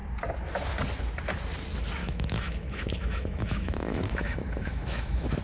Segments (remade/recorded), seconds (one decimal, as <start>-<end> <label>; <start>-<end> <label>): 0.0-2.0 recorded; 2.0-5.4 remade